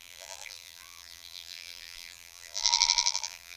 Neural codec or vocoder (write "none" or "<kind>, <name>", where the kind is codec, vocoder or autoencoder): vocoder, BigVGAN v2